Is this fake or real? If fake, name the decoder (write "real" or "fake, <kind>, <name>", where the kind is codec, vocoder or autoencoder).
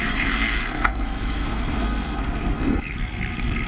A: fake, codec, SNAC